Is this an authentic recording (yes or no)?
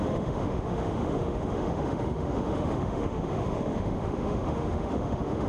no